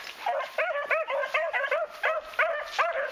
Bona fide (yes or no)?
yes